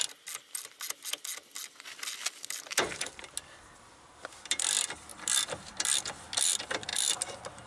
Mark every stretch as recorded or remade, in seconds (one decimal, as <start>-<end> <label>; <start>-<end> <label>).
0.0-7.7 recorded